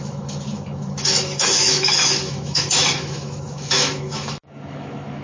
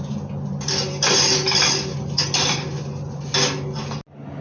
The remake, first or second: first